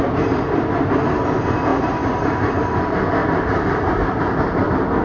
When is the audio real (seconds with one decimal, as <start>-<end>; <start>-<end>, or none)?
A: 0.0-1.7; 2.7-3.2; 3.9-5.0